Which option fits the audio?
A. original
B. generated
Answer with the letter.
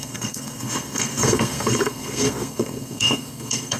B